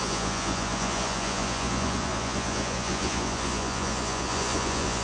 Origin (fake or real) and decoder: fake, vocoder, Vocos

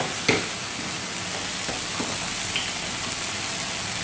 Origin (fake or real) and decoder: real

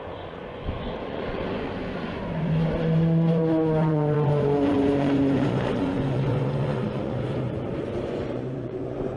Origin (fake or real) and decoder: fake, vocoder, Vocos